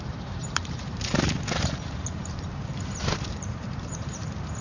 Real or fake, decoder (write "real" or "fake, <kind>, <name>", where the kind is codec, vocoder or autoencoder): fake, vocoder, BigVGAN v2